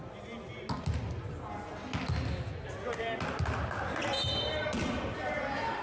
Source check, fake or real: real